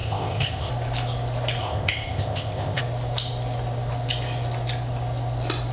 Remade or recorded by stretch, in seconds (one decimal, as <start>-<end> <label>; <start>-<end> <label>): 0.0-0.7 remade; 0.7-1.6 recorded; 1.6-2.8 remade; 2.8-5.7 recorded